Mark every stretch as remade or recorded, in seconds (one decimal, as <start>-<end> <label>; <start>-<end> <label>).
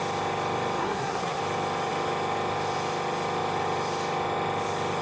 0.0-0.8 recorded; 0.8-1.4 remade; 1.4-5.0 recorded